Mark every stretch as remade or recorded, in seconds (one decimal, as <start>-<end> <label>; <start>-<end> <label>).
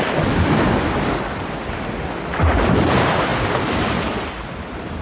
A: 0.0-5.0 recorded